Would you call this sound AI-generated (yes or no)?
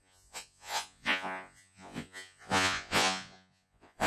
yes